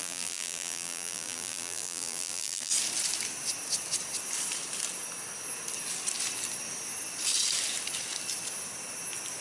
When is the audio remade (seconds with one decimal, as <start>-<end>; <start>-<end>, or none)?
0.0-2.7